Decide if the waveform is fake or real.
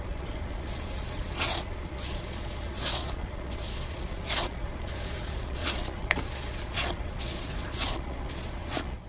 fake